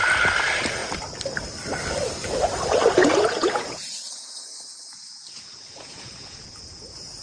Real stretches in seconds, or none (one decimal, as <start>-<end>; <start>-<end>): 0.0-3.0